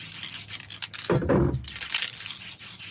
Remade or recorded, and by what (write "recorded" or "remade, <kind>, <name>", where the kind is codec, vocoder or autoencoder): recorded